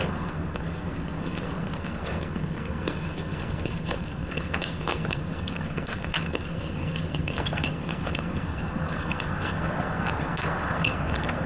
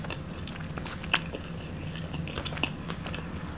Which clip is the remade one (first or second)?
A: first